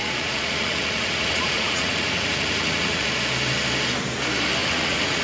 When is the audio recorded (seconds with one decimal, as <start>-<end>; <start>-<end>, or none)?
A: 3.1-4.6